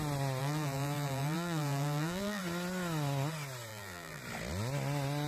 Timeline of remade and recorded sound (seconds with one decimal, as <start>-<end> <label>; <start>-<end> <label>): 0.0-0.4 recorded; 0.4-2.4 remade; 2.4-3.7 recorded; 3.7-4.2 remade; 4.2-5.3 recorded